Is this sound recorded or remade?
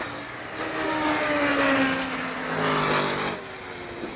recorded